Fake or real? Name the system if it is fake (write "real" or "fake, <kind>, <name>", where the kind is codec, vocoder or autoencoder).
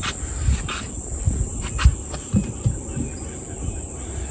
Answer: real